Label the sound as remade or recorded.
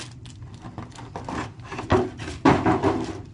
recorded